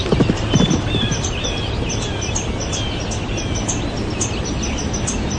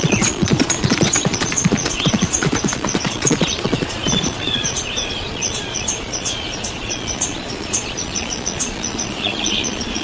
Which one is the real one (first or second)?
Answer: first